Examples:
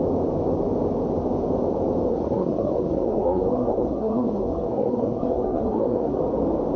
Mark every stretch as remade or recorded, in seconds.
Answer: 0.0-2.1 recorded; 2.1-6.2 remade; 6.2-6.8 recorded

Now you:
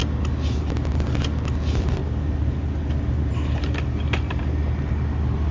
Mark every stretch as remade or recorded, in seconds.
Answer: 0.0-5.5 recorded